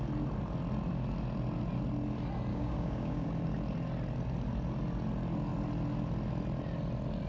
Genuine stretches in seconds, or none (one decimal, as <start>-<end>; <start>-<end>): 0.0-2.5; 3.3-7.3